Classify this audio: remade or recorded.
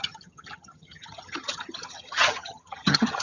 remade